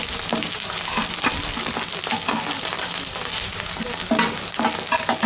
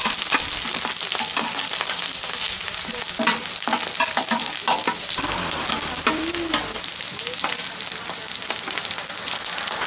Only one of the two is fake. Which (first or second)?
second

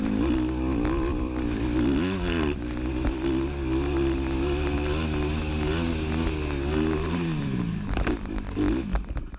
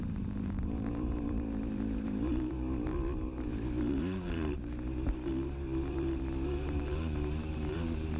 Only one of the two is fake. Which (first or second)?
second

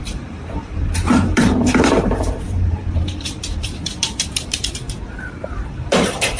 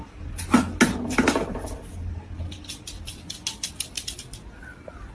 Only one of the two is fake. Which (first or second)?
first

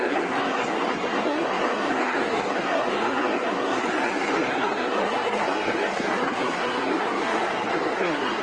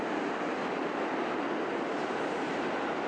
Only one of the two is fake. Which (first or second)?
first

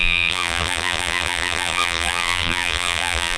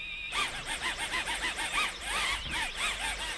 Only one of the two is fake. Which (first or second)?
first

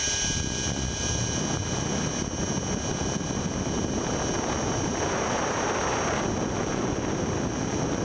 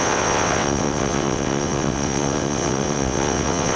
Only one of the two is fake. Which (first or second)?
second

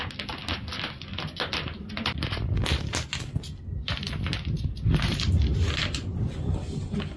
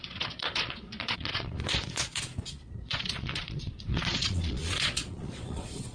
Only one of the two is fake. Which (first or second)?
second